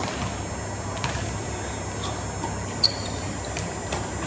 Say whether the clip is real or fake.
real